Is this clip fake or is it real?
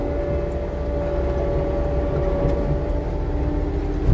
real